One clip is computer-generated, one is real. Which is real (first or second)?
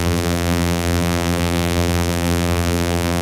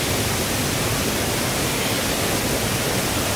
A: second